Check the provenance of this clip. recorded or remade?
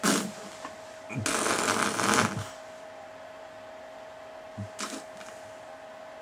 recorded